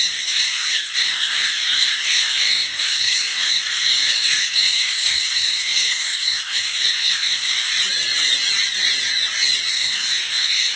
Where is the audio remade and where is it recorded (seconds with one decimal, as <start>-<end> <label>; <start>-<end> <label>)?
0.0-7.7 remade; 7.7-9.7 recorded; 9.7-10.8 remade

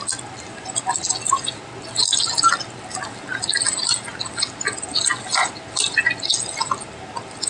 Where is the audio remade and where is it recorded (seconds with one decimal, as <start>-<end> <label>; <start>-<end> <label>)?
0.0-7.5 recorded

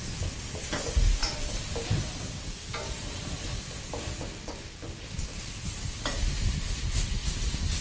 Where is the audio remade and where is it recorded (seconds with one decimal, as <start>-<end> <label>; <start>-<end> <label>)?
0.0-7.8 recorded

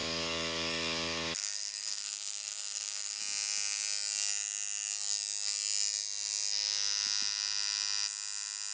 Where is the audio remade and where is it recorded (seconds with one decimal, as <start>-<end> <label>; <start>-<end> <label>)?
0.0-3.2 remade; 3.2-8.7 recorded

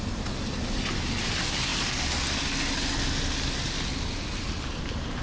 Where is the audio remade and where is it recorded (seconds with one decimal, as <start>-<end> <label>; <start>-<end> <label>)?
0.0-5.2 recorded

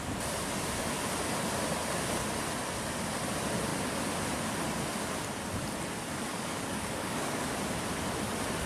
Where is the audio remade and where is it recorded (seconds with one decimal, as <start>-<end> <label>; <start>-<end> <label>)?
0.0-6.3 recorded; 6.3-7.6 remade; 7.6-8.7 recorded

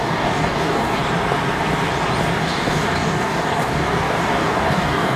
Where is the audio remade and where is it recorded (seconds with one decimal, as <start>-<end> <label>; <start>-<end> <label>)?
0.0-1.0 remade; 1.0-2.4 recorded; 2.4-5.2 remade